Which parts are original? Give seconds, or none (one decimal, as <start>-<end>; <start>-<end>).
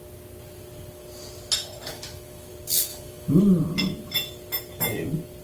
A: 0.0-1.9; 2.5-2.9; 3.4-5.4